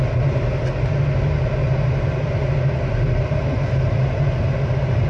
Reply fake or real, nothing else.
real